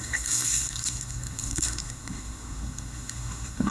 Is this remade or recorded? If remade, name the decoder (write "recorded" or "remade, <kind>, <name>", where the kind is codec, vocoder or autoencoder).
remade, codec, SNAC